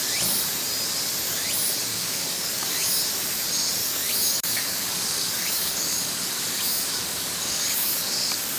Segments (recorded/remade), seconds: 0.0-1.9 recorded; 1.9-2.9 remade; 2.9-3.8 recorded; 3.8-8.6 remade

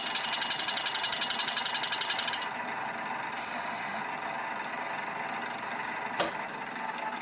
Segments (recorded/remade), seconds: 0.0-3.4 recorded; 3.4-4.0 remade; 4.0-7.2 recorded